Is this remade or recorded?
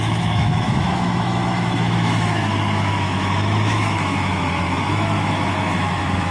remade